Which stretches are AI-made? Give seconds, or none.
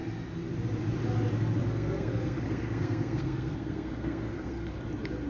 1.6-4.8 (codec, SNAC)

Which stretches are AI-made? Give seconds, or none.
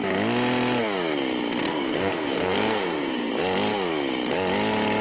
1.6-3.3 (codec, SNAC)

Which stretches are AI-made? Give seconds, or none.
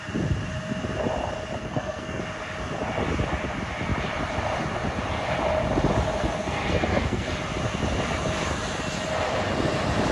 1.6-2.2 (codec, SNAC); 6.2-7.4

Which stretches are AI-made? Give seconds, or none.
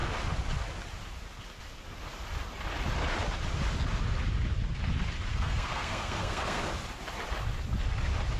5.3-6.6 (codec, SNAC)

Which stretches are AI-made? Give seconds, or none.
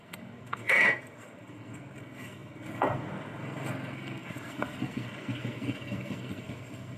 0.0-7.0 (codec, SNAC)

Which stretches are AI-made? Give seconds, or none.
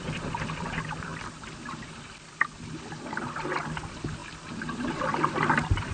none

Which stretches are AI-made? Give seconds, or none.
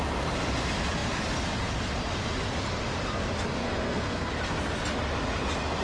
3.6-4.3 (codec, SNAC)